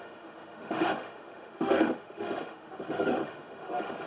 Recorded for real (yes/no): no